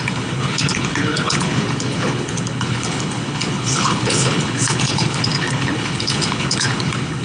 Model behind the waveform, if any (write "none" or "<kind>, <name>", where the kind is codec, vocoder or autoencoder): codec, HILCodec